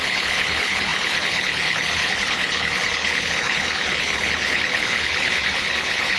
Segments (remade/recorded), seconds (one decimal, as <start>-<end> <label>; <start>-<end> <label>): 0.0-6.2 remade